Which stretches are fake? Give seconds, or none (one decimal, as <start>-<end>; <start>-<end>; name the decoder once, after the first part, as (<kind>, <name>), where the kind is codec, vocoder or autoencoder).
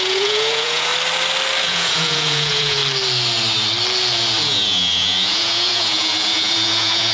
0.0-0.9 (vocoder, Vocos); 1.6-2.8; 4.4-7.1